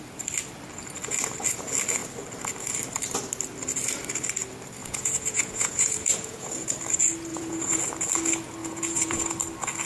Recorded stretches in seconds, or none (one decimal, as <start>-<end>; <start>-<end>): 0.0-4.8; 6.8-7.3; 7.8-8.6; 9.3-9.9